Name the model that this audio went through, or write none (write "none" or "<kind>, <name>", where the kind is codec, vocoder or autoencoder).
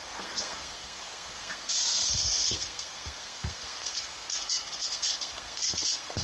codec, SNAC